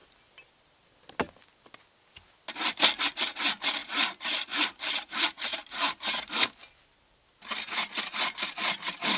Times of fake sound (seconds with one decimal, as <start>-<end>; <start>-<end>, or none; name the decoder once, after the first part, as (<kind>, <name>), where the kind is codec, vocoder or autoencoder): 3.8-6.3 (vocoder, BigVGAN v2)